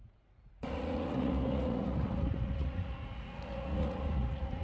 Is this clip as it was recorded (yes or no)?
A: no